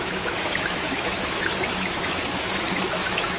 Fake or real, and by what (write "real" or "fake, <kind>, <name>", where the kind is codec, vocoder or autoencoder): fake, autoencoder, DAC-VAE